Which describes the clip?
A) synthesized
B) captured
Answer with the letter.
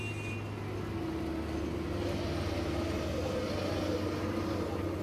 B